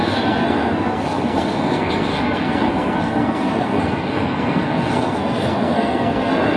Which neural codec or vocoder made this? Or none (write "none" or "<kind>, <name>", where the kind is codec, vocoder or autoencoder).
codec, SNAC